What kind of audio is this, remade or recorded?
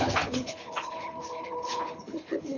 remade